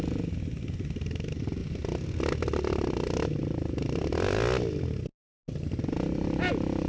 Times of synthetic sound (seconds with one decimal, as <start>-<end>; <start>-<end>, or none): none